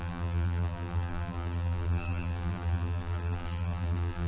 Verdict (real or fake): fake